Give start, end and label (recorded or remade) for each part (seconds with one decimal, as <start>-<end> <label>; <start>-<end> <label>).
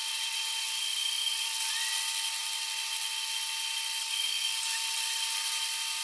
0.0-0.8 remade; 0.8-1.3 recorded; 1.3-1.9 remade; 1.9-6.0 recorded